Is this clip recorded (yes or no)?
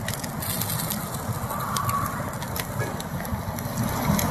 yes